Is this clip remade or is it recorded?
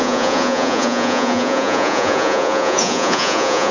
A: remade